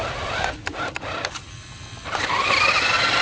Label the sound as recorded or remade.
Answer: recorded